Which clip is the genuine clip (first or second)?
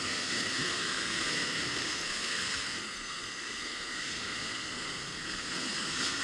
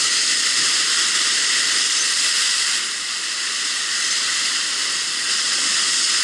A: second